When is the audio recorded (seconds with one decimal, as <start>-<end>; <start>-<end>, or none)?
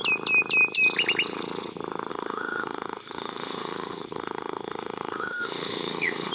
0.0-2.1